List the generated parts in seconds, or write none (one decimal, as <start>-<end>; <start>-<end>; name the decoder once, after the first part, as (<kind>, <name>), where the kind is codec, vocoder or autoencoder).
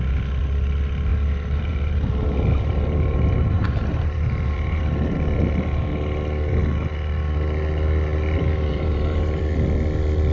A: 1.1-4.8 (vocoder, BigVGAN v2); 8.7-9.4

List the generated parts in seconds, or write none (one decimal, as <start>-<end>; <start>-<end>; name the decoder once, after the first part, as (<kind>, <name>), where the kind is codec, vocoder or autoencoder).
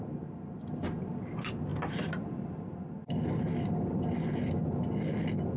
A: 1.7-3.4 (vocoder, BigVGAN v2)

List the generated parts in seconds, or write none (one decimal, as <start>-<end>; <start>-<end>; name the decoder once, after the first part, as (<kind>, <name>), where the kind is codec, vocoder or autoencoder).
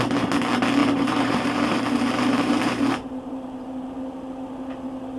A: 0.8-3.9 (vocoder, BigVGAN v2)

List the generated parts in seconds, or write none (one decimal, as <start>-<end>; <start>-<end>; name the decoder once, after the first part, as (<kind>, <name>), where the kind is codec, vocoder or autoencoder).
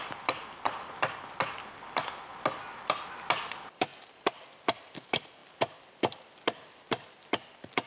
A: 0.0-2.3 (vocoder, BigVGAN v2); 2.8-3.9; 4.6-7.9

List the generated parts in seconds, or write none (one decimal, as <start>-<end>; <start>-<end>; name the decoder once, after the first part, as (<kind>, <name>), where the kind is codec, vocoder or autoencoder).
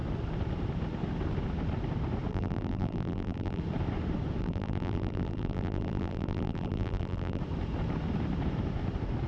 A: 2.3-3.6 (vocoder, BigVGAN v2); 4.4-7.4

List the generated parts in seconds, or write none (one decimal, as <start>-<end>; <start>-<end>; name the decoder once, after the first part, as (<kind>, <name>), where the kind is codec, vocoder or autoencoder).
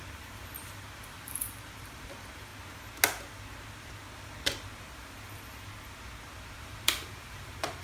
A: 0.0-2.5 (vocoder, BigVGAN v2); 6.6-7.8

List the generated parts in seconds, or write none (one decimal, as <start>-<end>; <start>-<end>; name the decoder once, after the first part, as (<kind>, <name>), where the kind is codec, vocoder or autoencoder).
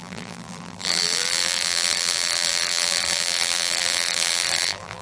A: 0.0-5.0 (vocoder, BigVGAN v2)